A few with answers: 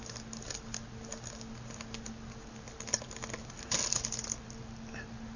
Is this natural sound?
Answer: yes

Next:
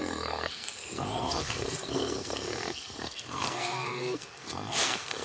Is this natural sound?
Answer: no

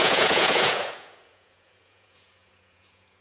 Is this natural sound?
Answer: no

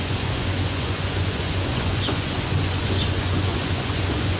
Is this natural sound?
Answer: no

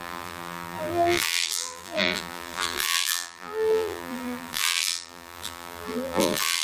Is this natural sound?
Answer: no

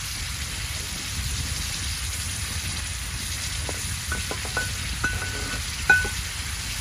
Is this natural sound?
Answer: yes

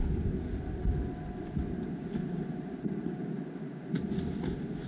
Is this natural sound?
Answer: yes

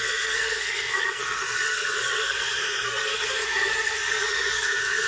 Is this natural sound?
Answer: no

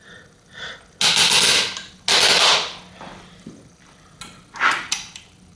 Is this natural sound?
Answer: yes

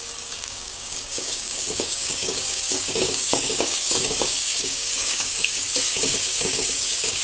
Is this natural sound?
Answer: no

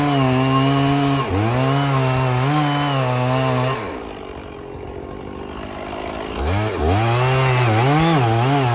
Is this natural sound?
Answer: yes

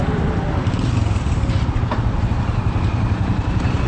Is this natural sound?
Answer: yes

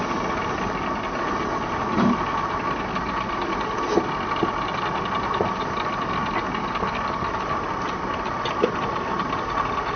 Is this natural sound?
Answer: yes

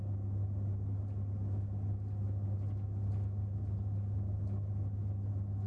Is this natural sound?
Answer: yes